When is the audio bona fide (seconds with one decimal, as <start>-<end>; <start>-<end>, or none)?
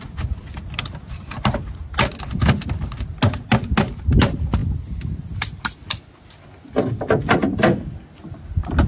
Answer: 0.0-8.9